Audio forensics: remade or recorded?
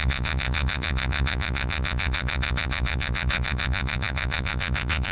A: remade